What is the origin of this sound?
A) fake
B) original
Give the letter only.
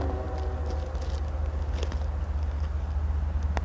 B